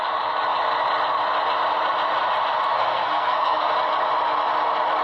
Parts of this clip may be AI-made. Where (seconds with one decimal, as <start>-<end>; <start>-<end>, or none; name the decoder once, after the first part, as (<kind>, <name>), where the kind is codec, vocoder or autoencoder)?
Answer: 2.7-3.7 (codec, SNAC)